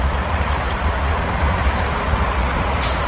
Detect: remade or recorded remade